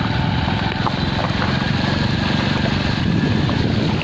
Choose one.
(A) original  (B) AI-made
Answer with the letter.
A